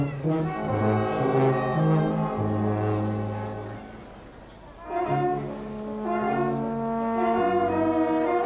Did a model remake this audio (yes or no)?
no